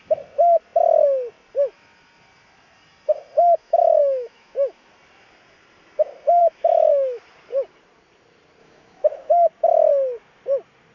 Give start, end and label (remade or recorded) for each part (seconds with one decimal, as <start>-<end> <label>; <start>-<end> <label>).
0.0-3.6 recorded; 3.6-4.9 remade; 4.9-6.4 recorded; 6.4-7.2 remade; 7.2-8.6 recorded; 8.6-9.3 remade; 9.3-10.9 recorded